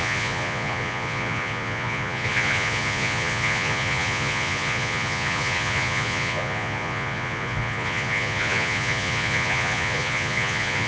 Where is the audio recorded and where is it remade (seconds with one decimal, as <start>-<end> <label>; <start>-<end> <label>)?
0.0-10.9 remade